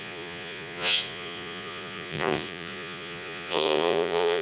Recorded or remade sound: remade